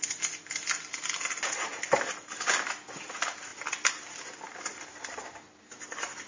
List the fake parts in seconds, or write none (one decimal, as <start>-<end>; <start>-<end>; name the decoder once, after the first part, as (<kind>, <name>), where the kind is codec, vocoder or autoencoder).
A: none